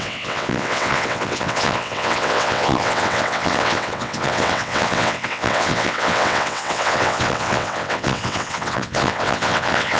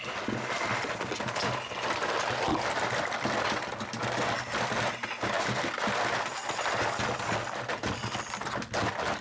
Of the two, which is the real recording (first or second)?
second